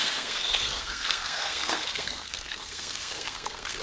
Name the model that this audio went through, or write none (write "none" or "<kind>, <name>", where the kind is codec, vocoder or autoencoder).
codec, SNAC